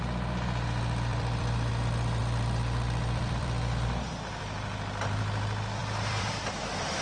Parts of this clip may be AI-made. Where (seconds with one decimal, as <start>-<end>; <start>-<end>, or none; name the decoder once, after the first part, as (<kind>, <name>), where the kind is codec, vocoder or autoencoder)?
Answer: 1.1-1.7 (vocoder, BigVGAN v2); 2.2-5.2; 5.8-6.6